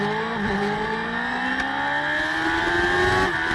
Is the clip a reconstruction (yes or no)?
no